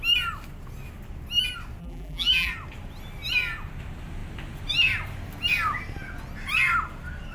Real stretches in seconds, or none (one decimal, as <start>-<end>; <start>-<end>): 0.0-1.8; 2.5-7.3